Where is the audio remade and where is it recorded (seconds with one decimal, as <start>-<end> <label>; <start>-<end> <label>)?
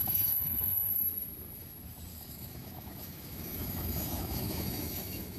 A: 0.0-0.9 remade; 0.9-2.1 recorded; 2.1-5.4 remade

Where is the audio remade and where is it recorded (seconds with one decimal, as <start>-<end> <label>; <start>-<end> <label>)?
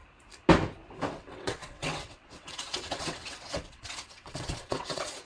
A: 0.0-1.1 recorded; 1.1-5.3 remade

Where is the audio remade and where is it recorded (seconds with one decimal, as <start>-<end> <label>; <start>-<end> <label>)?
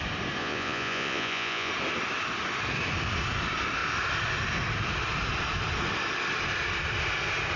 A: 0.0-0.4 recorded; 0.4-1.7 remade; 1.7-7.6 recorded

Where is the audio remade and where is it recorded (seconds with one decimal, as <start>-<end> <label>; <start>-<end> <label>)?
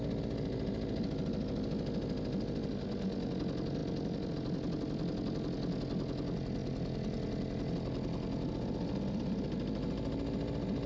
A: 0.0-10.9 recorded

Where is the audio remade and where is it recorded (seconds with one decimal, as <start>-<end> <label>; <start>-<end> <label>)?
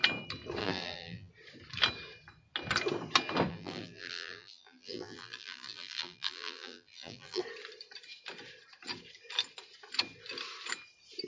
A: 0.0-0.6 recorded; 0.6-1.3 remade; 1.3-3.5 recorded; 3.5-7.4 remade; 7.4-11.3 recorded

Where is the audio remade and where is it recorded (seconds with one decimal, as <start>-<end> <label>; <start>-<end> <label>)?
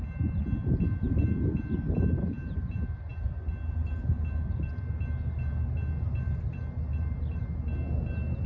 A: 0.0-6.9 recorded; 6.9-7.4 remade; 7.4-8.5 recorded